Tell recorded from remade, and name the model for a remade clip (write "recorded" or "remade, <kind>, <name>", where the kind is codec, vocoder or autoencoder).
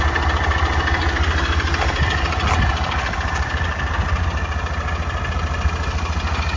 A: recorded